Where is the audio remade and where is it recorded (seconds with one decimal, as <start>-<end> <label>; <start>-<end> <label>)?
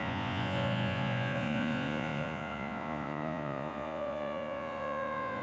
0.0-5.4 remade